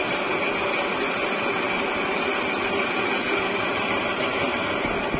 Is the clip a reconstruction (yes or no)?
no